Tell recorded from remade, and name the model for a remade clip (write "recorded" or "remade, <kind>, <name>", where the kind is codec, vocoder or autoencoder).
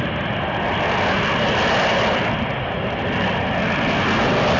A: recorded